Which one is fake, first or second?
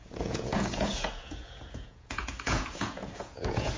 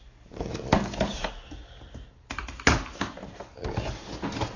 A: first